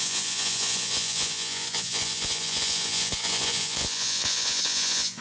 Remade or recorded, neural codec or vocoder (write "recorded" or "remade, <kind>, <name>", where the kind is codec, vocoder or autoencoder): remade, vocoder, Vocos